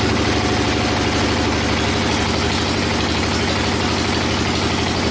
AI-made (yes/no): no